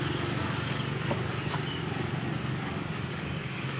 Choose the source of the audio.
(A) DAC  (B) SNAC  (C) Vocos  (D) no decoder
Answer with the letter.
A